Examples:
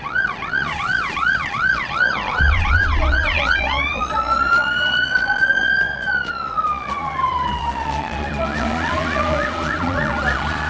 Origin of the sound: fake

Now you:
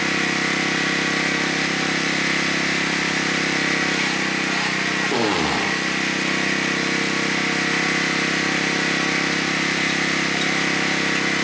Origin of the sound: real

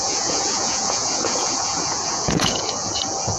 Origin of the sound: fake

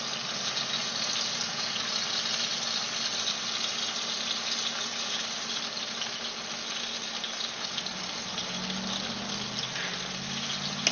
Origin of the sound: real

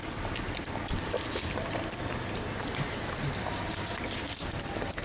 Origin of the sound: real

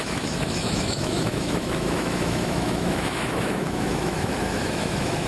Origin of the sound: fake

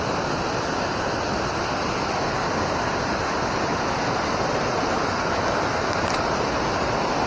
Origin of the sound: real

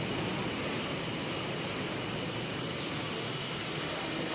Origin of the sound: real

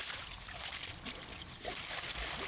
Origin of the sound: real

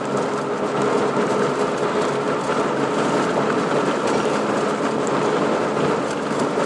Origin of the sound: real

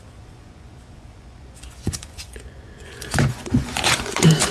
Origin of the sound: fake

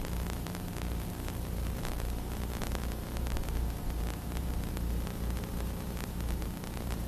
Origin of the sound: fake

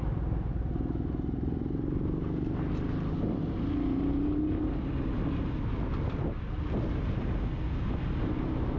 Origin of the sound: real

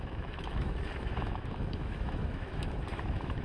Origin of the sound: fake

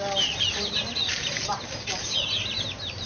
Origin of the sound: real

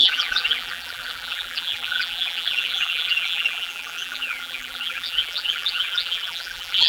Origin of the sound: fake